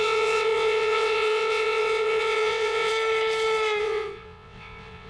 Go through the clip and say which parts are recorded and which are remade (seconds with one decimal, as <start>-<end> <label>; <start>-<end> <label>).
0.0-2.9 remade; 2.9-3.8 recorded; 3.8-5.1 remade